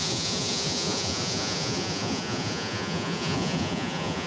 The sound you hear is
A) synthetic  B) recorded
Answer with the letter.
A